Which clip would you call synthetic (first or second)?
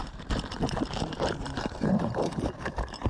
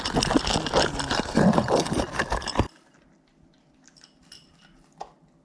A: first